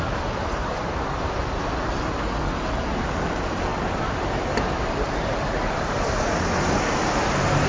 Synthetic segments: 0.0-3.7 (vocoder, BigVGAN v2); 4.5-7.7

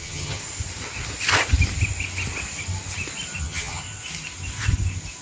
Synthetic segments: 0.0-0.4 (vocoder, HiFi-GAN); 3.4-3.8

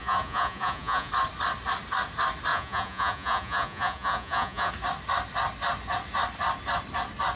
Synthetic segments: 0.0-1.1 (vocoder, Vocos); 2.5-4.7